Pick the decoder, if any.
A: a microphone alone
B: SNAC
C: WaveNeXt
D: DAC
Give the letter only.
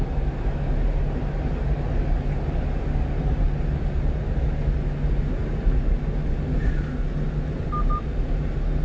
A